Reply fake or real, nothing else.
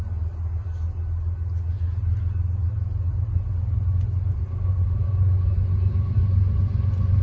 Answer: real